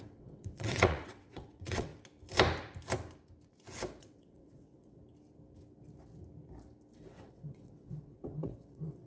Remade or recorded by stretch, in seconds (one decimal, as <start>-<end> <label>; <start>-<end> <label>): 0.0-1.9 remade; 1.9-4.0 recorded; 4.0-5.0 remade; 5.0-7.0 recorded; 7.0-9.1 remade